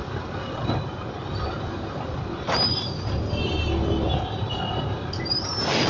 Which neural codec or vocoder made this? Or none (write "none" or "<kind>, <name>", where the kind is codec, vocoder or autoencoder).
none